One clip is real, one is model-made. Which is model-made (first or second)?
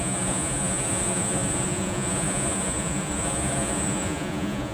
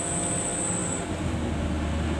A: first